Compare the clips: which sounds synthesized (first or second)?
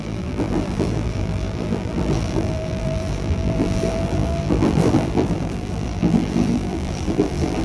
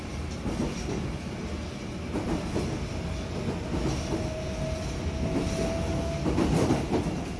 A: first